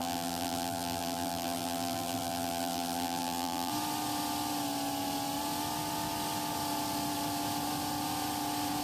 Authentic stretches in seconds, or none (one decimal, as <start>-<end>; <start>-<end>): 3.7-8.8